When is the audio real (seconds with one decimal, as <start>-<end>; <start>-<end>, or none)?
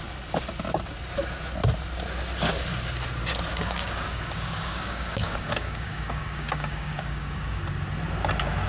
0.0-3.5; 7.6-8.7